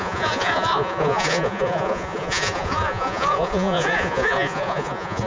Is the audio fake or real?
fake